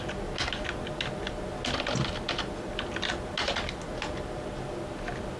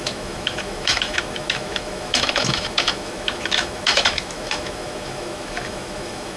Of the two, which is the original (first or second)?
first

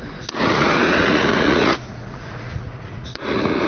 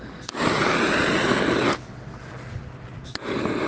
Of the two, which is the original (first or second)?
second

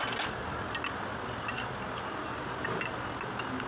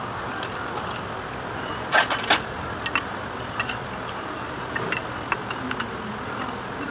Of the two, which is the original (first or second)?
first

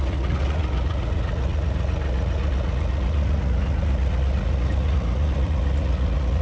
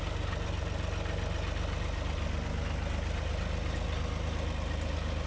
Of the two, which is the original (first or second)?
second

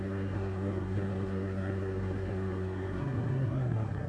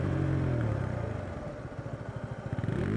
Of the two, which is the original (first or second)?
second